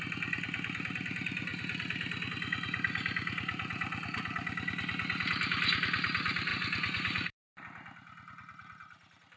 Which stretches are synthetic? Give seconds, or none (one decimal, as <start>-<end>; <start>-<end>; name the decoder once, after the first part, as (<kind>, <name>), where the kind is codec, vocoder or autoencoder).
6.5-7.6 (vocoder, BigVGAN v2)